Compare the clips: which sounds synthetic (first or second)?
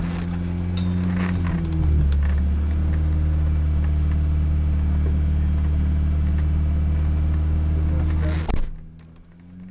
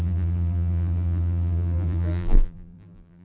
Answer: second